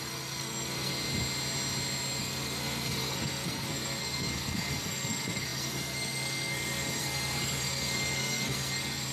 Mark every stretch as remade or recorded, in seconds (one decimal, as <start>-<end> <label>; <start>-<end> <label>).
0.0-0.9 remade; 0.9-2.2 recorded; 2.2-9.1 remade